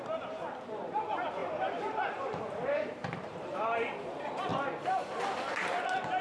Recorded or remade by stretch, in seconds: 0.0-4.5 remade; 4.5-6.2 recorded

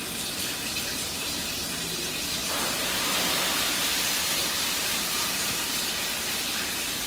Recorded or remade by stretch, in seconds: 0.0-0.7 recorded; 0.7-1.8 remade; 1.8-2.4 recorded; 2.4-3.6 remade; 3.6-4.4 recorded; 4.4-5.6 remade; 5.6-7.1 recorded